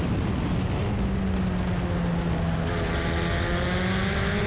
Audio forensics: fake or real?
real